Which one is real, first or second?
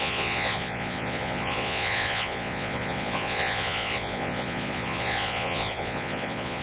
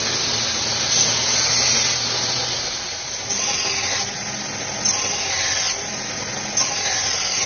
second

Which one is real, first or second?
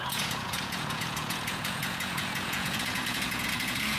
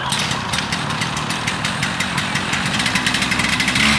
second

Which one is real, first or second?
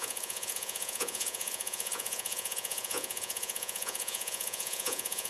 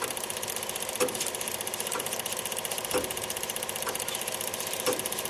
second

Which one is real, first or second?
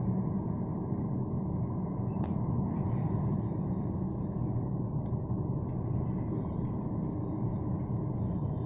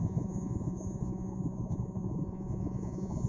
first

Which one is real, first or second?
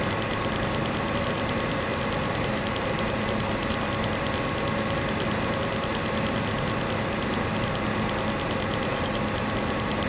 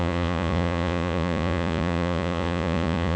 first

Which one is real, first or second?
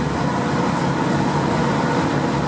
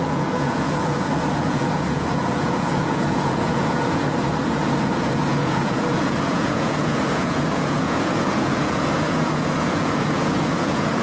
first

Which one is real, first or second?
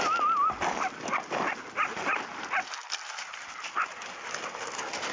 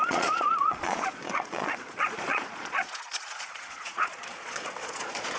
first